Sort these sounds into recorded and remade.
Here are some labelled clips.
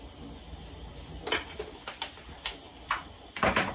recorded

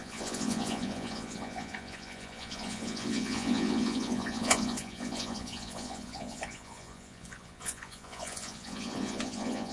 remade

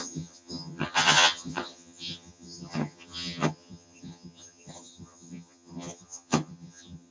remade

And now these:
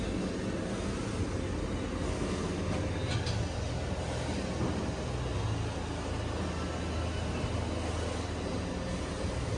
recorded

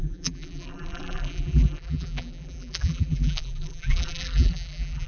remade